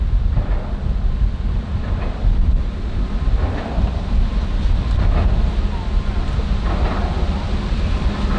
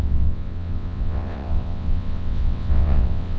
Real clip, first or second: first